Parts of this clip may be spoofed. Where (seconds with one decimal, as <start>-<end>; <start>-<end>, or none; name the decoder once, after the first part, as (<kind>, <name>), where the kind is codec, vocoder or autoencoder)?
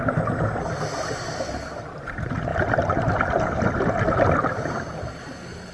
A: none